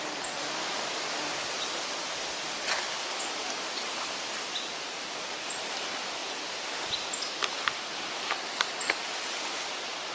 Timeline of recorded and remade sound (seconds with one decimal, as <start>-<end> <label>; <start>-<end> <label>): 0.0-10.1 recorded